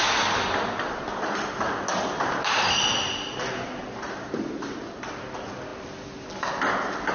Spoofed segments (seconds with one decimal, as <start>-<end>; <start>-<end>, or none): none